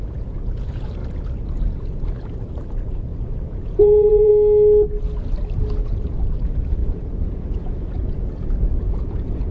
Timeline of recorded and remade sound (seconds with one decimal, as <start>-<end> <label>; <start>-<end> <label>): 0.0-1.0 remade; 1.0-1.7 recorded; 1.7-4.3 remade; 4.3-5.6 recorded; 5.6-9.5 remade